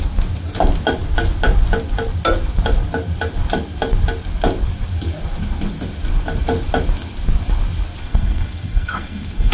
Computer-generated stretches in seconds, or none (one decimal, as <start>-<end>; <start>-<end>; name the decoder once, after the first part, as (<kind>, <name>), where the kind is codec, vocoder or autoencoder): 8.0-9.5 (codec, SNAC)